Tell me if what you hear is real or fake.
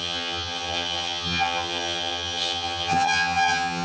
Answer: fake